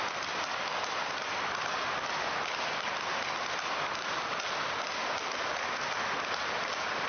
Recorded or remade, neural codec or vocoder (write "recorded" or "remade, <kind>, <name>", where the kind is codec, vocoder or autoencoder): recorded